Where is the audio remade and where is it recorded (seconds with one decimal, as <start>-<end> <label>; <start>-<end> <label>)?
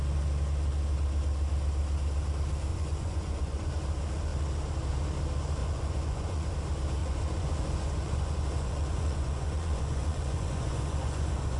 0.0-2.7 recorded; 2.7-3.7 remade; 3.7-5.6 recorded; 5.6-6.5 remade; 6.5-7.0 recorded; 7.0-11.6 remade